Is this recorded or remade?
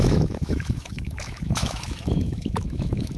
remade